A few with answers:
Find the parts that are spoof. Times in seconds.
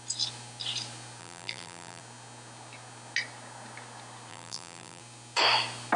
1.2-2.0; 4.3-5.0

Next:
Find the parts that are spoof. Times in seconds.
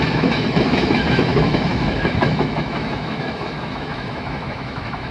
0.0-5.1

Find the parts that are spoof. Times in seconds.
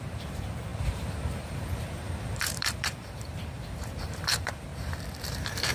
0.0-4.7; 5.3-5.7